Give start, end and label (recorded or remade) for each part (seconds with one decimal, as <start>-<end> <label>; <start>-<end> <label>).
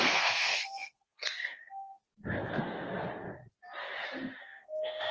0.0-1.9 remade; 1.9-2.6 recorded; 2.6-3.0 remade; 3.0-4.4 recorded; 4.4-5.1 remade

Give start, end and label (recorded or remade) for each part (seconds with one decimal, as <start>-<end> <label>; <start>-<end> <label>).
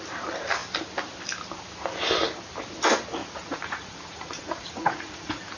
0.0-3.2 recorded; 3.2-5.6 remade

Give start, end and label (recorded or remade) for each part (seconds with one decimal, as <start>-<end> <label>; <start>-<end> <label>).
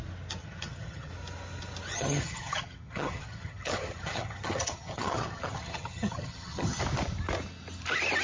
0.0-0.4 recorded; 0.4-1.1 remade; 1.1-1.9 recorded; 1.9-6.8 remade; 6.8-8.2 recorded